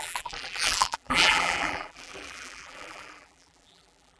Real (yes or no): no